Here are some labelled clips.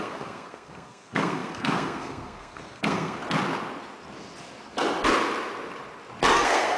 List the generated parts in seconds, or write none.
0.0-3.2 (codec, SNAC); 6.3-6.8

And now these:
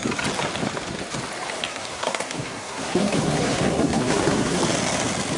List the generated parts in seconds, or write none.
1.7-4.6 (codec, SNAC)

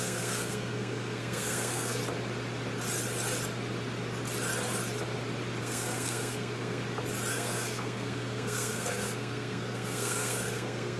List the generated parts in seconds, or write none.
0.0-2.0 (codec, SNAC); 5.6-6.8; 7.3-11.0